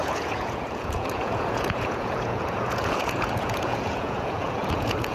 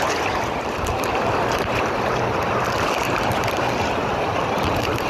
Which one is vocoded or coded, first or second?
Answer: first